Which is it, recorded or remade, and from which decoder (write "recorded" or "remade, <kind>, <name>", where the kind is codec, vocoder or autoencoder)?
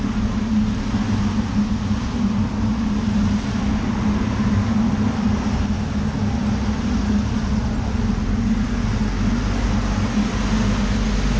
recorded